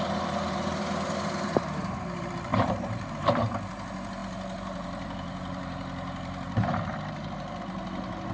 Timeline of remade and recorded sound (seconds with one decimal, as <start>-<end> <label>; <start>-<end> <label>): 0.0-8.3 remade